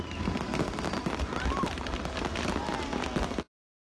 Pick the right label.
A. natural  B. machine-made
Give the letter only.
A